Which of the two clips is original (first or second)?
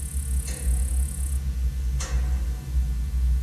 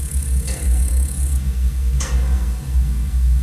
first